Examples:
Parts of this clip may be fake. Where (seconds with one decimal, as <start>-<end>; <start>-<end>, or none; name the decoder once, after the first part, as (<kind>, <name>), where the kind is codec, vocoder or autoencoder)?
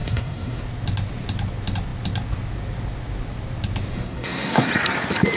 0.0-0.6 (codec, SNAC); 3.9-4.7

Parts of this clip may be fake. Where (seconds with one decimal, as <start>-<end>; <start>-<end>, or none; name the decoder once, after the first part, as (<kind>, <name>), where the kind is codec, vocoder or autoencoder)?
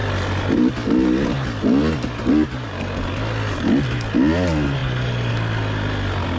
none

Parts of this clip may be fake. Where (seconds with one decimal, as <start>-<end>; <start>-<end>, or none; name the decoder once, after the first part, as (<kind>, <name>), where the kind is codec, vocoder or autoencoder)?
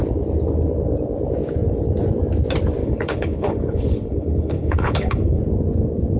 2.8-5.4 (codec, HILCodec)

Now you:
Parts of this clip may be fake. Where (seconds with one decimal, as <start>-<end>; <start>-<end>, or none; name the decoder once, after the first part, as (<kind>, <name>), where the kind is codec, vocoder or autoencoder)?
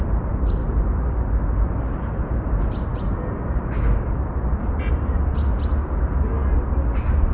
0.0-0.6 (vocoder, BigVGAN v2); 1.8-2.9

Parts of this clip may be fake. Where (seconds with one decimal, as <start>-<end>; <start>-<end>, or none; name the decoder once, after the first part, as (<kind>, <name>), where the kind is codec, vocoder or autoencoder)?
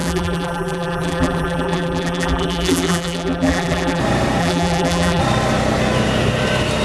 0.0-4.0 (vocoder, BigVGAN v2); 4.4-5.2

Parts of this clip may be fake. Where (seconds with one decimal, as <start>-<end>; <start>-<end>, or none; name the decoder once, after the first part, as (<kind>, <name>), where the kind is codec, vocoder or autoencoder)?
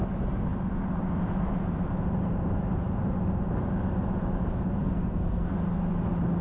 4.8-5.5 (codec, SNAC)